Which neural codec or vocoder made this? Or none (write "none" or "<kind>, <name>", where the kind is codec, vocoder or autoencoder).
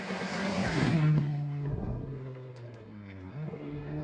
codec, SNAC